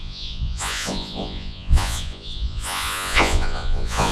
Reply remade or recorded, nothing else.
remade